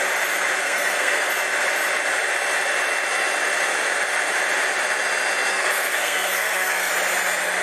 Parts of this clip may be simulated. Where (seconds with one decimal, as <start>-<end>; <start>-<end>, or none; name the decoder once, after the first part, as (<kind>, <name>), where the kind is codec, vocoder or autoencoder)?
0.6-1.3 (codec, SNAC); 5.5-6.9